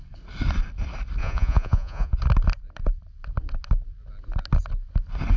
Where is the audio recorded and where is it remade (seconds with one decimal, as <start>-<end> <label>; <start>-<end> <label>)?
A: 0.0-1.2 recorded; 1.2-2.1 remade; 2.1-5.4 recorded